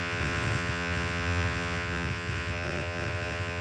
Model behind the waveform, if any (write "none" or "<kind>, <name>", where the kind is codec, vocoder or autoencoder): vocoder, WaveNeXt